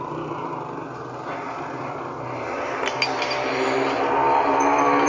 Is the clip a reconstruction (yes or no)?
no